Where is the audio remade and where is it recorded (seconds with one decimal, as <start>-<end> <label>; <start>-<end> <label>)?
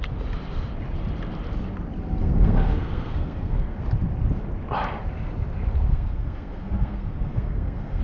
0.0-2.2 recorded; 2.2-3.8 remade; 3.8-5.9 recorded; 5.9-8.0 remade